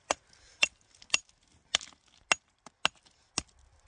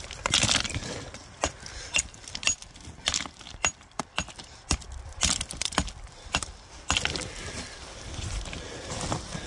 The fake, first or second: second